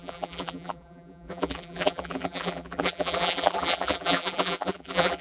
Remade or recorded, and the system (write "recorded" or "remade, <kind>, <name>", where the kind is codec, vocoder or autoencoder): remade, vocoder, BigVGAN v2